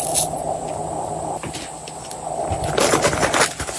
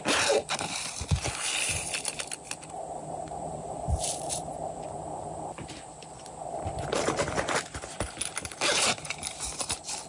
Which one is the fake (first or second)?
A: second